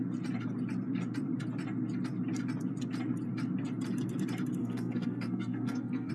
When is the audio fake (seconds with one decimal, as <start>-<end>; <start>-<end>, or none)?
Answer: 4.6-6.1

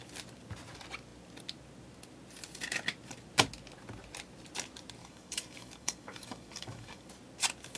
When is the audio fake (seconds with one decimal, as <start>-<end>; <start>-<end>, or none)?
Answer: 5.0-7.1